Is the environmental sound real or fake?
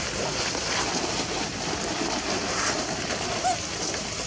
real